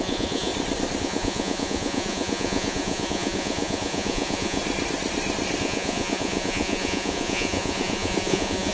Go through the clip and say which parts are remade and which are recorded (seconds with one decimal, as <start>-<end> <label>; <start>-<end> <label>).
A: 0.0-0.5 remade; 0.5-1.0 recorded; 1.0-4.6 remade; 4.6-5.6 recorded; 5.6-8.7 remade